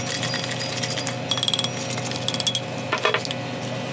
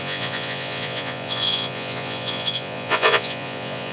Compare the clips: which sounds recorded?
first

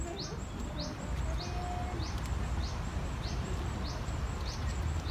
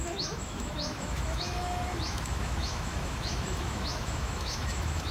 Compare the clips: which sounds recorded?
first